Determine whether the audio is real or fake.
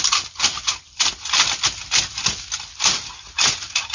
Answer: real